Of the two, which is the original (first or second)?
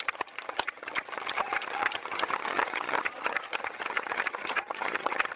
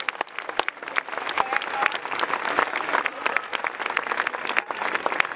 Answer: second